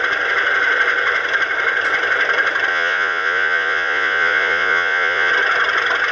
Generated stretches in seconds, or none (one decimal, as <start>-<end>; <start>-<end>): 2.7-5.3